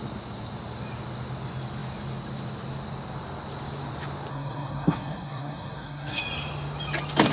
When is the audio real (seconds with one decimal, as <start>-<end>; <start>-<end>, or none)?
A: 0.0-4.3; 6.2-7.3